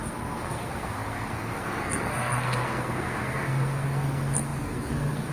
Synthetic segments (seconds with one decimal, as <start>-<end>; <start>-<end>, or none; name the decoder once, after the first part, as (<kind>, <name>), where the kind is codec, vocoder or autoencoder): 0.0-5.3 (codec, SNAC)